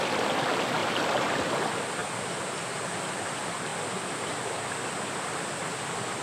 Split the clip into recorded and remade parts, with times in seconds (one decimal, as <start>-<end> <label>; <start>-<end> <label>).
0.0-0.8 recorded; 0.8-1.5 remade; 1.5-6.2 recorded